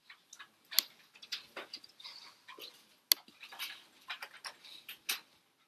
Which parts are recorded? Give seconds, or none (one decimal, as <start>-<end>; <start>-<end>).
0.0-5.7